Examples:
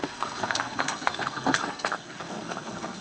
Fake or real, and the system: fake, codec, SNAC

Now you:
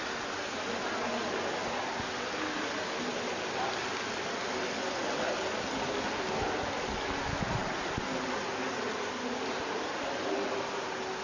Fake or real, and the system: real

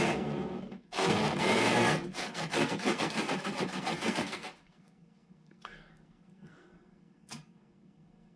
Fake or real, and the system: fake, codec, SNAC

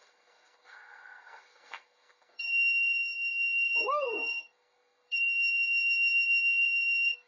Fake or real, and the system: fake, codec, SNAC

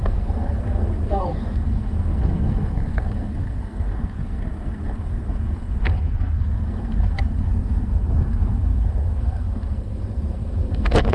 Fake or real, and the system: fake, codec, SNAC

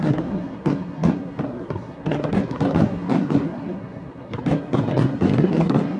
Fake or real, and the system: fake, codec, SNAC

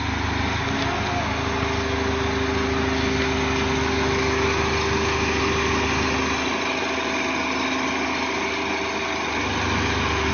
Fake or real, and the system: real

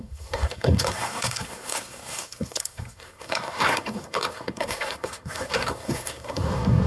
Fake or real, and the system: fake, codec, SNAC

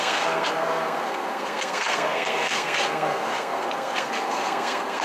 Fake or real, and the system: fake, codec, SNAC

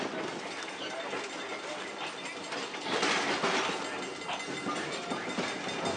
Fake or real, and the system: real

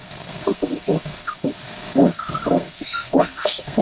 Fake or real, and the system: fake, codec, SNAC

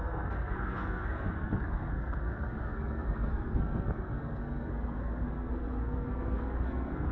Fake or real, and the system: fake, codec, SNAC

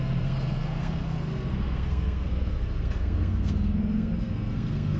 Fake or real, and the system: fake, codec, SNAC